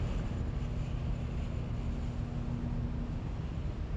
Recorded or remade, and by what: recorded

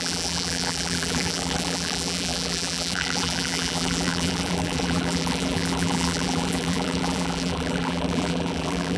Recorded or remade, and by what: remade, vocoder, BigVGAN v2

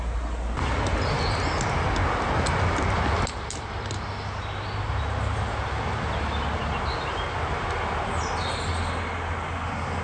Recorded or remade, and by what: recorded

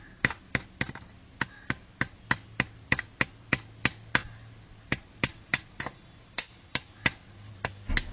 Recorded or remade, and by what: recorded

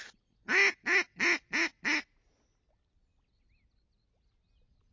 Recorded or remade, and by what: recorded